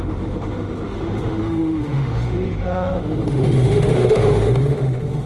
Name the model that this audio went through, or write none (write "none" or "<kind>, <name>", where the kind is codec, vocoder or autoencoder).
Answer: autoencoder, DAC-VAE